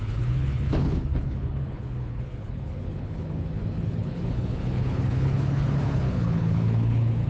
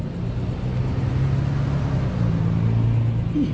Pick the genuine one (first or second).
second